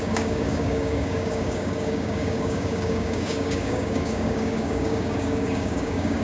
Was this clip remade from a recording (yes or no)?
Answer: yes